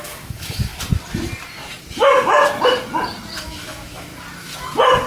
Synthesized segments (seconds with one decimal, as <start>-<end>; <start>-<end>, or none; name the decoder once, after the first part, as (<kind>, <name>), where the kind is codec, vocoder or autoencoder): 0.0-0.7 (autoencoder, DAC-VAE); 3.4-4.1